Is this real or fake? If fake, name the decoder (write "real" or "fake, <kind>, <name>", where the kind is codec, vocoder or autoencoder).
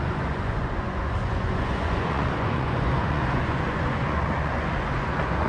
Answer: fake, vocoder, Vocos